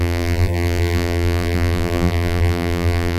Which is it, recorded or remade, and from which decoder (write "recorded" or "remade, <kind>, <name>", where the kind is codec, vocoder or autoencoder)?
remade, vocoder, BigVGAN v2